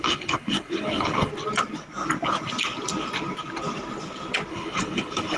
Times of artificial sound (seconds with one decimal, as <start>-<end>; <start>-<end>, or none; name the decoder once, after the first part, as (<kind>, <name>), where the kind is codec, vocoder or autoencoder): 0.0-1.3 (codec, HILCodec); 4.5-5.4